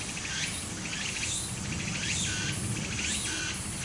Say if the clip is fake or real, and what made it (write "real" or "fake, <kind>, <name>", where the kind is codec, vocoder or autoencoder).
real